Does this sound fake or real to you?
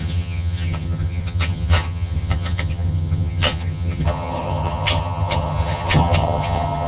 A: fake